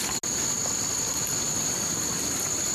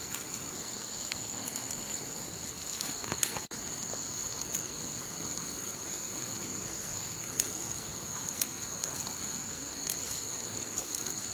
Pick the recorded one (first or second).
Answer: first